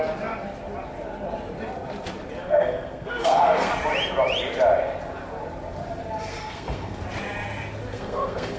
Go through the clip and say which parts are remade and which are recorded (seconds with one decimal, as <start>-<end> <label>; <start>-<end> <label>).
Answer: 0.0-2.4 recorded; 2.4-3.7 remade; 3.7-6.2 recorded; 6.2-7.0 remade; 7.0-7.9 recorded; 7.9-8.6 remade